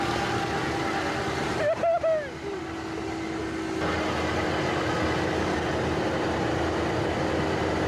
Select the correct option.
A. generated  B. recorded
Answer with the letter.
B